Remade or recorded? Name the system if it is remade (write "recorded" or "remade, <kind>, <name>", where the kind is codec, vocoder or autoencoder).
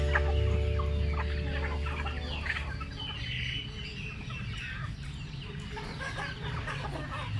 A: recorded